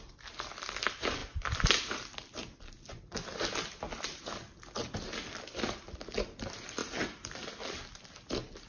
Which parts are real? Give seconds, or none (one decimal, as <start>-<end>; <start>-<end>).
0.0-8.7

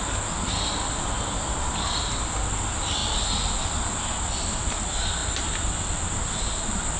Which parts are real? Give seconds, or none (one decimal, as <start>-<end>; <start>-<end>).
0.0-7.0

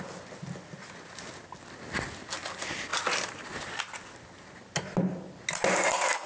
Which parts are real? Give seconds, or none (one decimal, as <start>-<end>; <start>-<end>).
0.0-6.3